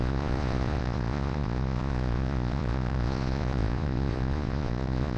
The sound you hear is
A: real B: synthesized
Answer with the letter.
B